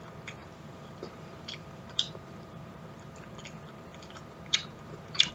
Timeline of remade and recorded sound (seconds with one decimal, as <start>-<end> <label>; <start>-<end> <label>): 0.0-0.4 recorded; 0.4-3.2 remade; 3.2-3.9 recorded; 3.9-5.3 remade